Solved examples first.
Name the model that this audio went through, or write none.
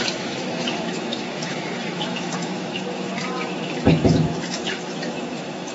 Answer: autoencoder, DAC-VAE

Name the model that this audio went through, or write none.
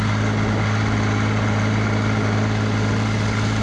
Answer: none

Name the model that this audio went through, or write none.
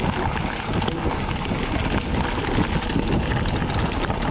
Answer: none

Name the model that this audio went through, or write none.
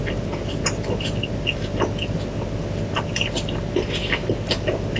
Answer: none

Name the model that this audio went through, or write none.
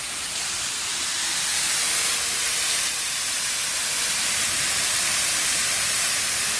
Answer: none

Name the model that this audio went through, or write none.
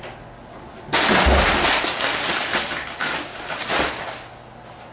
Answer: none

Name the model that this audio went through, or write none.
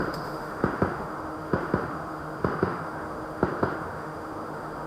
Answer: autoencoder, DAC-VAE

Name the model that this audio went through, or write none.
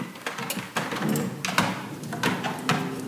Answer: none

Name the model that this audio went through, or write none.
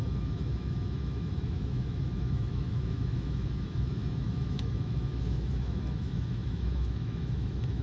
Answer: autoencoder, DAC-VAE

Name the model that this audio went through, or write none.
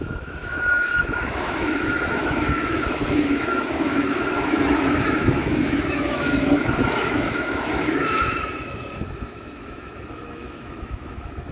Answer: autoencoder, DAC-VAE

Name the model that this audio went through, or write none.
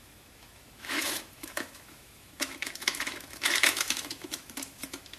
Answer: autoencoder, DAC-VAE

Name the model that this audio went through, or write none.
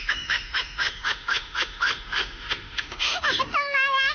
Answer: autoencoder, DAC-VAE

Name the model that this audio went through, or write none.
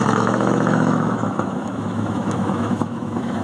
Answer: autoencoder, DAC-VAE